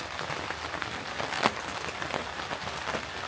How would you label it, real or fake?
real